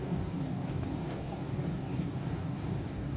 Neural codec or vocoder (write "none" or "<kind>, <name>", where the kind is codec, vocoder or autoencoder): codec, DAC